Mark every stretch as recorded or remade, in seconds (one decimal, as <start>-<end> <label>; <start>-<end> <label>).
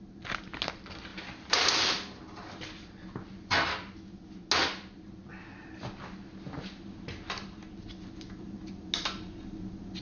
0.0-10.0 recorded